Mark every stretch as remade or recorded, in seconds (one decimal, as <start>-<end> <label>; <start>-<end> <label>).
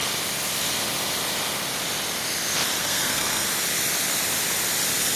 0.0-2.8 recorded; 2.8-3.5 remade; 3.5-5.2 recorded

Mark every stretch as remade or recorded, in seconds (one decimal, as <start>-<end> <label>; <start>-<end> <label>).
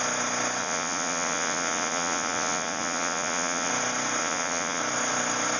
0.0-0.6 recorded; 0.6-3.7 remade; 3.7-4.2 recorded; 4.2-4.8 remade; 4.8-5.6 recorded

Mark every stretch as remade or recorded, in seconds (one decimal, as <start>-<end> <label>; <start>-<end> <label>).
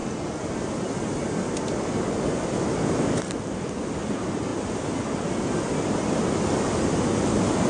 0.0-7.7 recorded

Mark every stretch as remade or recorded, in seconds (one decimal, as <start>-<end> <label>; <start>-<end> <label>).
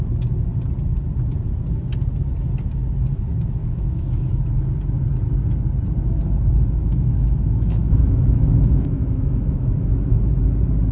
0.0-3.6 recorded; 3.6-4.4 remade; 4.4-6.8 recorded; 6.8-10.4 remade; 10.4-10.9 recorded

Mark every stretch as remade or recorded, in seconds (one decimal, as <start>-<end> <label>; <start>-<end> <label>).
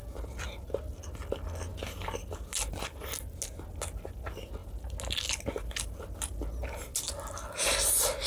0.0-8.3 recorded